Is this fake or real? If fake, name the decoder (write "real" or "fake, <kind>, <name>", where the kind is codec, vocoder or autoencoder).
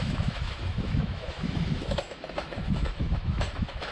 fake, autoencoder, DAC-VAE